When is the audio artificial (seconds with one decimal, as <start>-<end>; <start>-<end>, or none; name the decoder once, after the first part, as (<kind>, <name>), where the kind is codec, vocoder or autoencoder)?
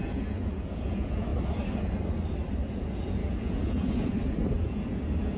0.0-1.3 (vocoder, Vocos); 2.7-5.4